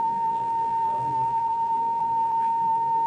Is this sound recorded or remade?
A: remade